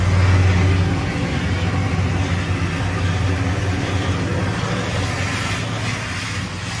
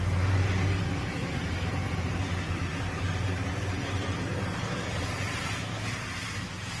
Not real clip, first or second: second